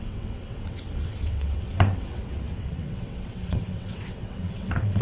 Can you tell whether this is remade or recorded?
remade